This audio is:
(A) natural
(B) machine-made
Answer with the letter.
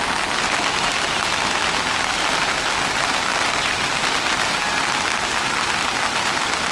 B